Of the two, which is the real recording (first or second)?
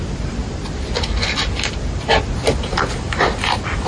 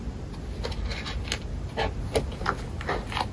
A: second